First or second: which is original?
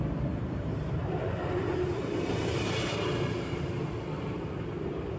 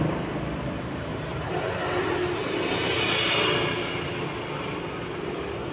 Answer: second